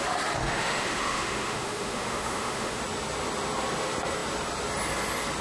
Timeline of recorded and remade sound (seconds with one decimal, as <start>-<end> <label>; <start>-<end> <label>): 0.0-0.4 recorded; 0.4-2.8 remade; 2.8-5.4 recorded